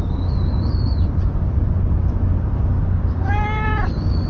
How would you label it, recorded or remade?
recorded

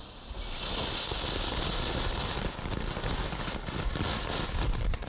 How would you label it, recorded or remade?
recorded